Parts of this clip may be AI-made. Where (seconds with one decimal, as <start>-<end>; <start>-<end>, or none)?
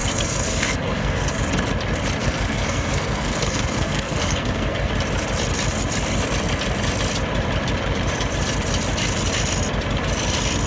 0.0-1.4; 2.2-4.9